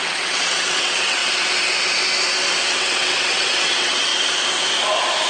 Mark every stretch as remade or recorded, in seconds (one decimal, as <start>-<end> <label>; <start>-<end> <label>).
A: 0.0-1.2 remade; 1.2-2.7 recorded; 2.7-4.1 remade; 4.1-5.3 recorded